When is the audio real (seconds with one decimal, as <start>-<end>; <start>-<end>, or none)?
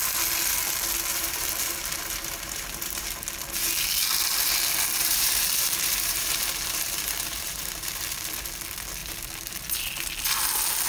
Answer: 0.0-1.1; 3.3-5.0; 8.0-10.9